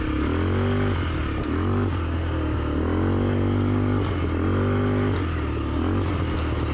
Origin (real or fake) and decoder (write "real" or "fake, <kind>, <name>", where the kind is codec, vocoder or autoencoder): real